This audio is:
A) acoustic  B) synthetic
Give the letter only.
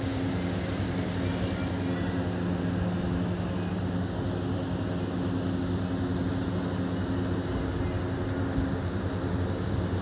A